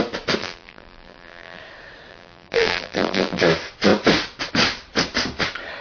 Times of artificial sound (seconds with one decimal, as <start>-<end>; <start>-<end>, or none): 0.4-1.6; 2.1-3.4